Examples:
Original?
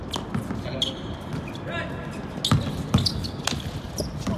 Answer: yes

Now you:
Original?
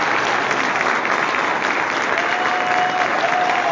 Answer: yes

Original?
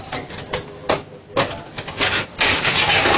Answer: yes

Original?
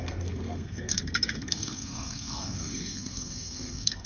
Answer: no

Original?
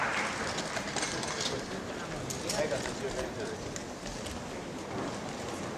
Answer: yes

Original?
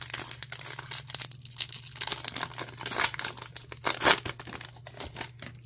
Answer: yes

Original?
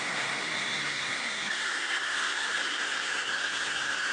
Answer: no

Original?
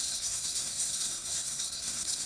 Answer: no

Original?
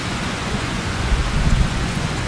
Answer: no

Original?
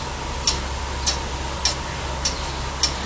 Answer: yes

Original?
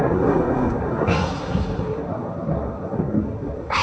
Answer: no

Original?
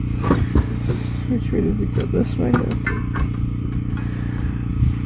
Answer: yes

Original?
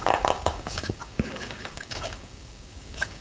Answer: no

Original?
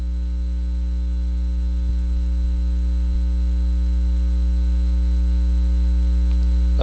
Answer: yes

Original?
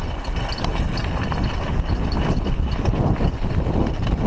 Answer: yes